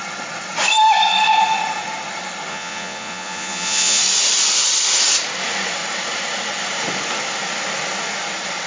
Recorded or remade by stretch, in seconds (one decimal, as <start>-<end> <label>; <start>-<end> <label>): 0.0-2.5 recorded; 2.5-4.0 remade; 4.0-8.7 recorded